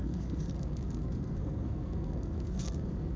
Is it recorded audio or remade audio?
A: remade